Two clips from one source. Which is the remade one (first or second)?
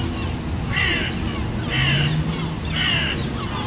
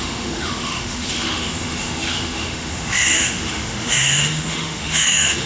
second